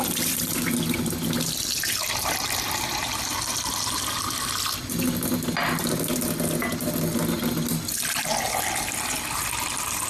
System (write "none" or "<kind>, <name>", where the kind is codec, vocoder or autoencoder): none